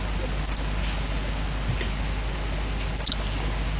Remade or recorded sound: recorded